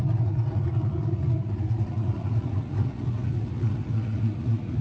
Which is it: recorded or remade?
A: remade